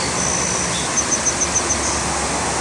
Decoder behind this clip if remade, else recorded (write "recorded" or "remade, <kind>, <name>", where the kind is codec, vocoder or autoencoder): recorded